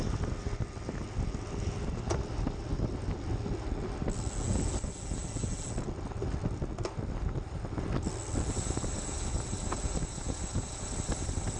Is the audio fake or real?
real